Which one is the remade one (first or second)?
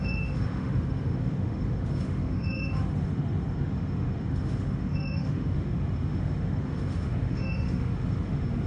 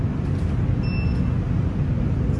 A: first